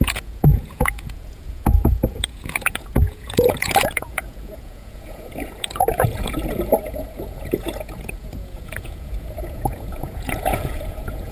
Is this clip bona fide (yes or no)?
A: no